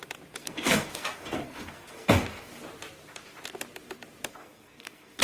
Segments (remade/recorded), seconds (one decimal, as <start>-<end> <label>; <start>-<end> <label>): 0.0-0.4 recorded; 0.4-2.5 remade; 2.5-4.3 recorded; 4.3-5.2 remade